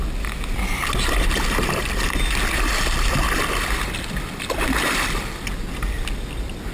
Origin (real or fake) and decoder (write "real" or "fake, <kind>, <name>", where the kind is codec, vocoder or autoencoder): real